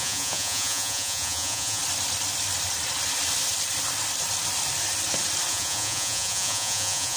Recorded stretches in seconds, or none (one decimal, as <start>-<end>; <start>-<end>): 1.8-5.5

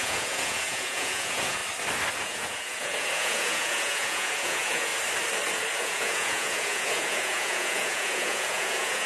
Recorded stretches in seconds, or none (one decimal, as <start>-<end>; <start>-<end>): 1.6-2.2; 4.9-5.8

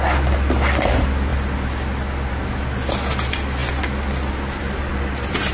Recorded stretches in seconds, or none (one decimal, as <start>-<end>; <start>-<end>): 0.0-5.5

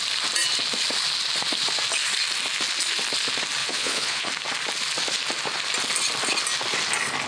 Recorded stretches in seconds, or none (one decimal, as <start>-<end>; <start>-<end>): 0.0-3.6; 4.3-7.3

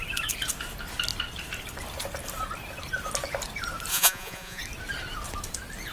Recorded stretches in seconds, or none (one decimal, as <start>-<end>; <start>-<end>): 0.0-3.9; 4.6-5.9

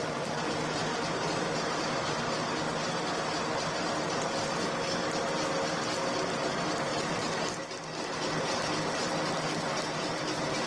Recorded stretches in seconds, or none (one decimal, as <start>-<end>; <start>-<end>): 0.0-10.7